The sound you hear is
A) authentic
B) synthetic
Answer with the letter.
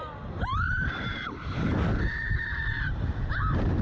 B